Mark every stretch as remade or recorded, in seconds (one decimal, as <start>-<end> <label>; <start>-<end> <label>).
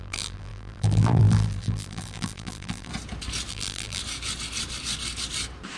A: 0.0-2.9 remade; 2.9-3.5 recorded; 3.5-4.0 remade; 4.0-5.8 recorded